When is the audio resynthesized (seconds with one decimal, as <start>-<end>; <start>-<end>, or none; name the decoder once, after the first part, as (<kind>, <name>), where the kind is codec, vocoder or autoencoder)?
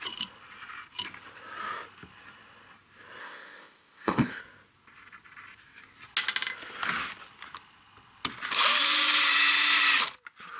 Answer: 3.2-4.4 (codec, ZipCodec)